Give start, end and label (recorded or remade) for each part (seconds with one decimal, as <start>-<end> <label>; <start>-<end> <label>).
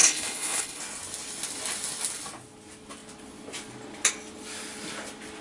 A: 0.0-0.8 remade; 0.8-5.4 recorded